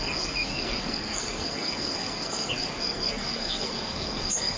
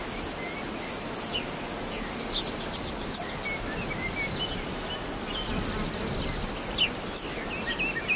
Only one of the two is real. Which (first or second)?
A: second